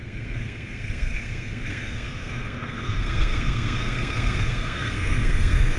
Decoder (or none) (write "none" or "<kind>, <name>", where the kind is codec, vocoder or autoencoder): codec, SNAC